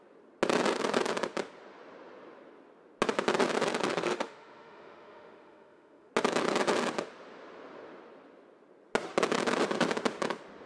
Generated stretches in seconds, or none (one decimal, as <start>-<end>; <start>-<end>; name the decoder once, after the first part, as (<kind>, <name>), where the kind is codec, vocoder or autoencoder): 3.9-6.1 (autoencoder, DAC-VAE)

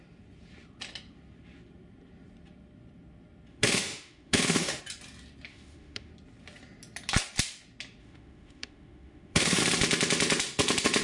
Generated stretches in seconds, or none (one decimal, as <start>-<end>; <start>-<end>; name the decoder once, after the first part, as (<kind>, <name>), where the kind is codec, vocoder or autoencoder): 3.5-4.8 (autoencoder, DAC-VAE); 5.5-6.1; 8.0-9.6

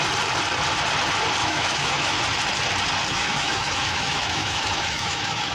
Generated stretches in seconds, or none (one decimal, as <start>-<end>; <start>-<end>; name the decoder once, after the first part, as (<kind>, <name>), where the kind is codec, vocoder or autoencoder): 1.4-2.2 (autoencoder, DAC-VAE); 3.1-5.5

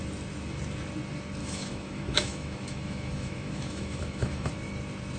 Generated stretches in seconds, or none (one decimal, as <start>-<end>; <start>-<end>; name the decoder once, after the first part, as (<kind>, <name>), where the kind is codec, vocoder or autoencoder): 1.4-4.5 (autoencoder, DAC-VAE)

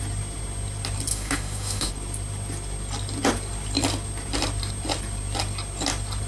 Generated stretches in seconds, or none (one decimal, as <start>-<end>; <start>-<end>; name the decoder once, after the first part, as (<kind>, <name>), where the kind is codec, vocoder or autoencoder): 1.1-1.9 (autoencoder, DAC-VAE)

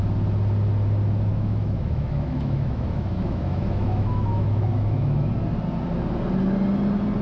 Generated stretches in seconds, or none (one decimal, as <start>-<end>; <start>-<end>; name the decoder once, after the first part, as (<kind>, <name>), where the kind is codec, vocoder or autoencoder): 1.3-5.3 (autoencoder, DAC-VAE)